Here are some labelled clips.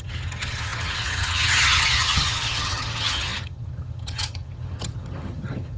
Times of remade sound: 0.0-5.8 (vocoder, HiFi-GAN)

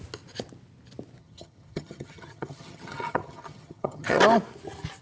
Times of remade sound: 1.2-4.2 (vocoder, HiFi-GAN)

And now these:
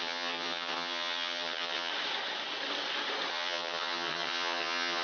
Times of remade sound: 0.0-1.9 (vocoder, HiFi-GAN); 3.3-5.0